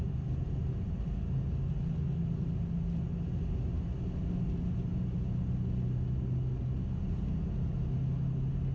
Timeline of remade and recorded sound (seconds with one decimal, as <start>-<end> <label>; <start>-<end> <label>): 0.0-8.7 recorded